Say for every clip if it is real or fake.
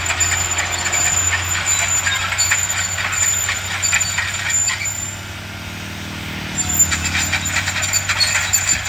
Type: real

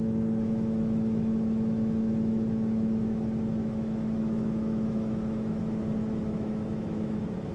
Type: fake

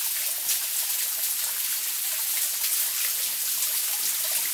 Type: real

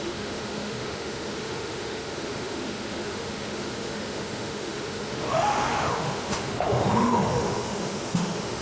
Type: fake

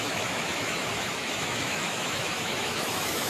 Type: fake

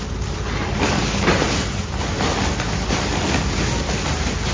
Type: real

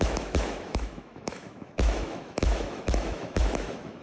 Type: fake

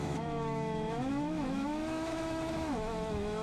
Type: fake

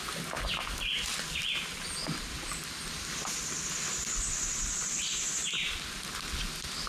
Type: real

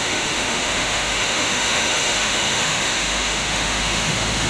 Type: fake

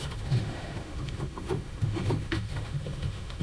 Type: fake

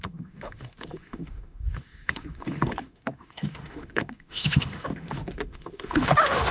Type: fake